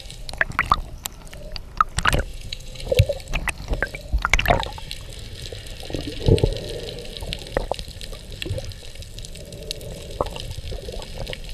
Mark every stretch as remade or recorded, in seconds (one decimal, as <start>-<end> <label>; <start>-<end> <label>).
0.0-2.3 recorded; 2.3-2.9 remade; 2.9-11.5 recorded